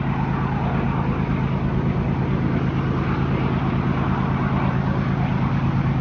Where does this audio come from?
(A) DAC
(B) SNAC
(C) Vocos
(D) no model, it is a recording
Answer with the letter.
D